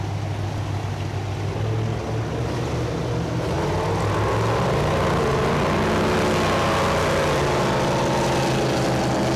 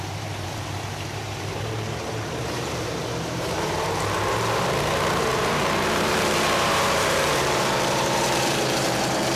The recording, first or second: first